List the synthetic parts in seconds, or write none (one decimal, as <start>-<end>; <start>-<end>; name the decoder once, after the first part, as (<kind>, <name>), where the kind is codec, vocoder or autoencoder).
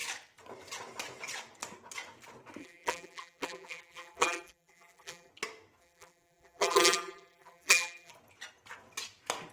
2.6-5.3 (vocoder, BigVGAN v2); 5.8-8.1